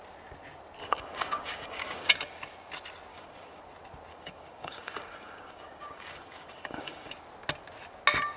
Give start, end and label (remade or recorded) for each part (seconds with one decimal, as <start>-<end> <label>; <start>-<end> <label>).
0.0-0.8 recorded; 0.8-2.1 remade; 2.1-3.1 recorded; 3.1-3.6 remade; 3.6-4.1 recorded; 4.1-7.1 remade; 7.1-8.4 recorded